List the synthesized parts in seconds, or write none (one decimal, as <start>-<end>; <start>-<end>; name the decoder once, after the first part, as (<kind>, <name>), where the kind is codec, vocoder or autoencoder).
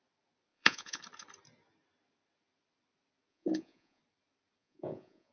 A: 0.5-1.0 (vocoder, Vocos); 3.3-4.0; 4.6-5.3